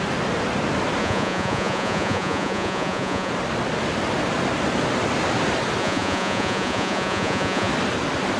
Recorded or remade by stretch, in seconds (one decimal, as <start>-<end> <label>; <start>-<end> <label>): 0.0-1.0 recorded; 1.0-3.3 remade; 3.3-5.8 recorded; 5.8-7.7 remade; 7.7-8.4 recorded